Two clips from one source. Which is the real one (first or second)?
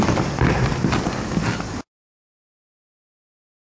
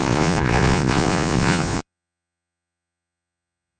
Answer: first